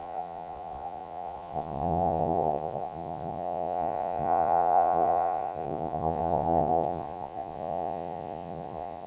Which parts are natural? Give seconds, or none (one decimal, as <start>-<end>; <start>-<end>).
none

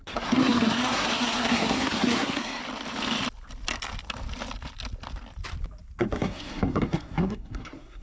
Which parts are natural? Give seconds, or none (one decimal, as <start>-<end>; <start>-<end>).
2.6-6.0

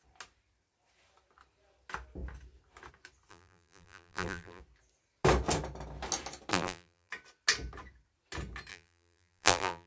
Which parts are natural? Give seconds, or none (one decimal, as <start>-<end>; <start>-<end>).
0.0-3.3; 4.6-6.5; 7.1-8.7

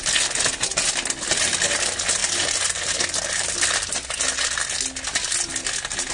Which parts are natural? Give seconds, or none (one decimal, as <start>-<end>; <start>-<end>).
0.0-6.1

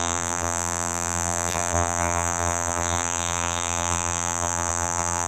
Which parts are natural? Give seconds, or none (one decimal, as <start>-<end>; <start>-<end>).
none

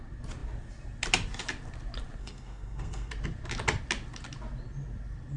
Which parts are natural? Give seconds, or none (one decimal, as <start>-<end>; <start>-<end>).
0.0-2.2; 3.1-5.4